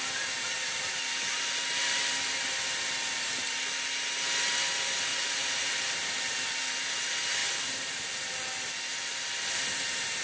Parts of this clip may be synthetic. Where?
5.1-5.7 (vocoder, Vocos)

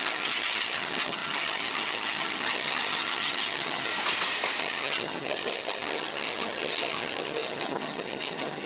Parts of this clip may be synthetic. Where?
0.0-3.9 (vocoder, HiFi-GAN); 4.6-8.7

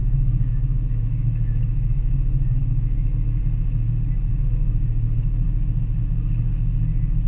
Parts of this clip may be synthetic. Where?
0.0-3.4 (autoencoder, DAC-VAE)

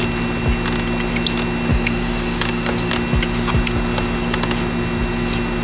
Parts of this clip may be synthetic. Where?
1.7-2.9 (codec, DAC)

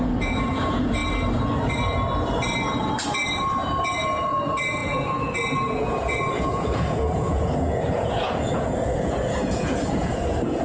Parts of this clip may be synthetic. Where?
0.0-1.0 (vocoder, Vocos); 3.8-10.6

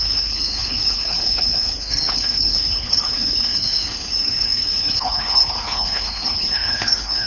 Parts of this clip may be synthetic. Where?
0.0-7.3 (codec, HILCodec)